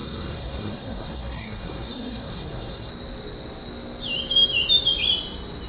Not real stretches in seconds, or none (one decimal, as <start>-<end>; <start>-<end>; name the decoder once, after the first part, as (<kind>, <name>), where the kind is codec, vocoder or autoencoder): 0.0-2.9 (codec, SNAC)